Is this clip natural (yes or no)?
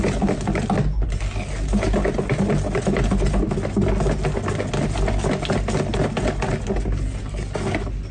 yes